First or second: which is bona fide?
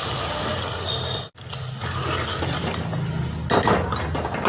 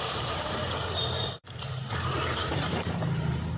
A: first